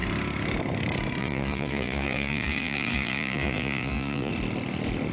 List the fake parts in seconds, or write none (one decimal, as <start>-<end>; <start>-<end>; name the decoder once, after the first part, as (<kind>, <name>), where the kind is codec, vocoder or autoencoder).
1.2-4.3 (vocoder, Vocos)